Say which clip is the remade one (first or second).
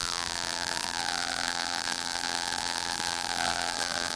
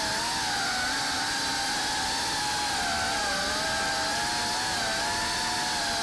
first